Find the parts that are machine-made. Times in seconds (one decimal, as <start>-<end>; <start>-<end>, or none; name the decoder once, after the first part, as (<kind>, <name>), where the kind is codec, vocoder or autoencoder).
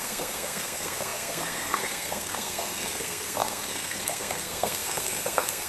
0.0-5.7 (codec, SNAC)